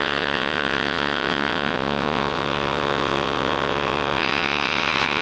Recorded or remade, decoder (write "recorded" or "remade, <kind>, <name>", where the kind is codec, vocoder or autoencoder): remade, vocoder, WaveNeXt